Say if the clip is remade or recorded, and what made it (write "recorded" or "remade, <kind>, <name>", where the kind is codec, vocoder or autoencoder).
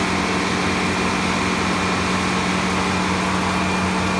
recorded